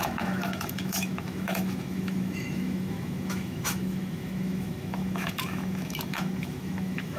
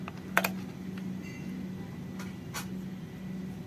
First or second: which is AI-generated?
first